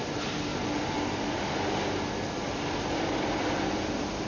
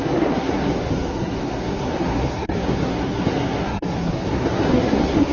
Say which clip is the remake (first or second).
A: second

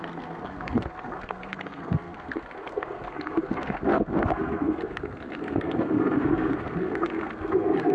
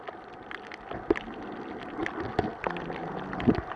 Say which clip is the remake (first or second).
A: first